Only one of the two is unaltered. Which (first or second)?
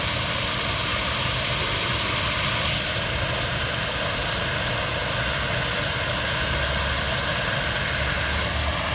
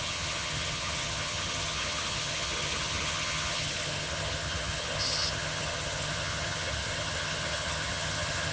first